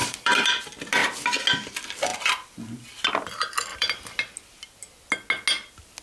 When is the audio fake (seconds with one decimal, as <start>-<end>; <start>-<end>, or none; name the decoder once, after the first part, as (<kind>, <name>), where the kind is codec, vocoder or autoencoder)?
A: 0.0-0.6 (vocoder, BigVGAN v2); 3.7-4.2